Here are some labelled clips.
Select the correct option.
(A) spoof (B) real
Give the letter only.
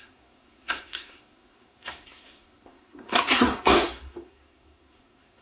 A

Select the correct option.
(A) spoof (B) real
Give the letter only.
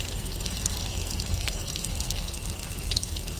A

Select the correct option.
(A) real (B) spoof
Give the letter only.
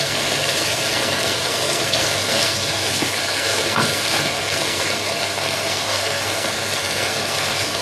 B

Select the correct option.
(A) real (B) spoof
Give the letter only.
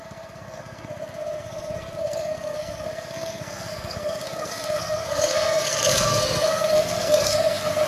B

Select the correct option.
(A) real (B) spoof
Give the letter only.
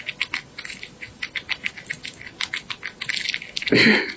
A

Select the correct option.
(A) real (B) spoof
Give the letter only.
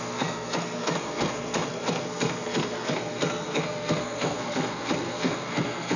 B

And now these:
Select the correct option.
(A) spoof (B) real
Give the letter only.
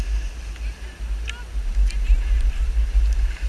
B